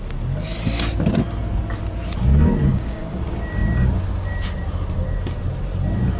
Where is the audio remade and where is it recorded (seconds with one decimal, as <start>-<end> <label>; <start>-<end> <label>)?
0.0-2.7 recorded; 2.7-3.2 remade; 3.2-6.2 recorded